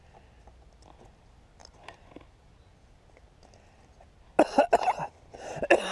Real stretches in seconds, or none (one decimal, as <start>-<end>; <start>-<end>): 0.0-5.9